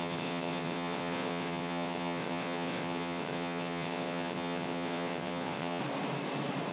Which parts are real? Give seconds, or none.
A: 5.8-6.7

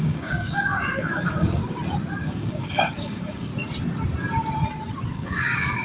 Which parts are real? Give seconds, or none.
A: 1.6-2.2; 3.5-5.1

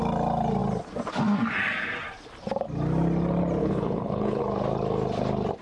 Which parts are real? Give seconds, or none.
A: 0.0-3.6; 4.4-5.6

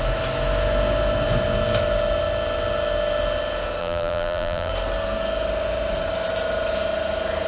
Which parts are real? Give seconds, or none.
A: 0.0-3.8; 4.7-7.5

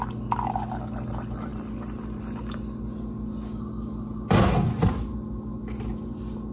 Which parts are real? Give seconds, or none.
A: 0.0-6.5